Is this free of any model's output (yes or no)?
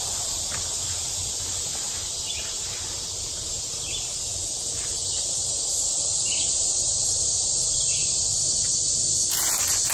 yes